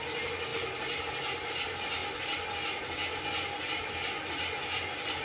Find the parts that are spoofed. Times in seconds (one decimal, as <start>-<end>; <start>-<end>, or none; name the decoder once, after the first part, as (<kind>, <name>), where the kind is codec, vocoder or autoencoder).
none